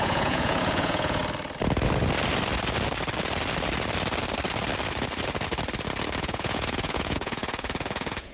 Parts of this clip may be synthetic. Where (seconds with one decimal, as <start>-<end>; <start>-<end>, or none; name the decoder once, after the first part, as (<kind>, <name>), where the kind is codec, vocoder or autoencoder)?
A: 0.0-1.2 (vocoder, Vocos); 6.2-8.3